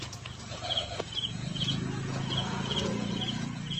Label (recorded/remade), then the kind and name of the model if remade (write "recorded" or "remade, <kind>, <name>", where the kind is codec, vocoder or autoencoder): remade, vocoder, Vocos